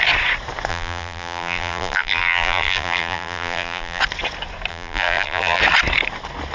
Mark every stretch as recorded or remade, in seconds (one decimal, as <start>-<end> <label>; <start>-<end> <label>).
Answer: 0.0-0.7 recorded; 0.7-4.0 remade; 4.0-4.7 recorded; 4.7-5.6 remade; 5.6-6.5 recorded